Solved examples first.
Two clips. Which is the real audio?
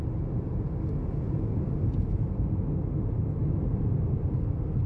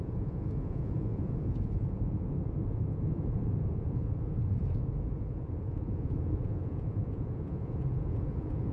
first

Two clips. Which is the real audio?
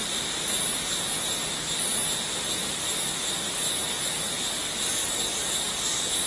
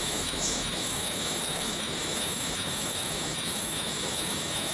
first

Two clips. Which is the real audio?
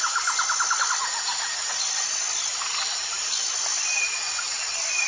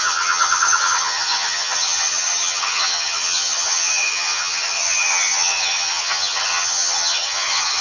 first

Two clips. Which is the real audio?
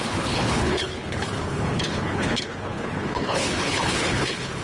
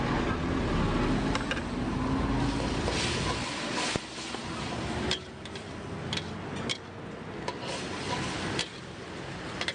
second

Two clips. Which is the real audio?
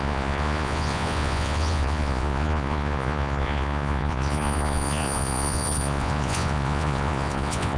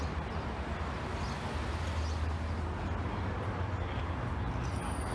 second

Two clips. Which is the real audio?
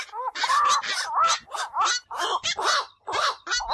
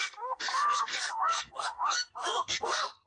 first